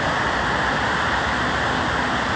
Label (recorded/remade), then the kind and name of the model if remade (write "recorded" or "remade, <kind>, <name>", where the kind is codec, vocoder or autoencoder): recorded